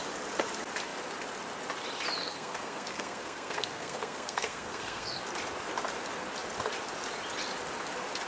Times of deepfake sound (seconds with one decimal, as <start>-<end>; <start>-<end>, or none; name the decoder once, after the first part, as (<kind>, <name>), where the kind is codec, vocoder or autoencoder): 2.2-5.2 (codec, SNAC)